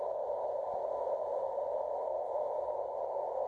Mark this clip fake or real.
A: real